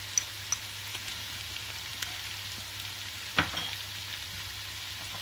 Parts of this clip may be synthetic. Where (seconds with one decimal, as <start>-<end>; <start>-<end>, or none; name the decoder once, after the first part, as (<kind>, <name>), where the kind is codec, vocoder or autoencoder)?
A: 0.9-1.4 (vocoder, Vocos)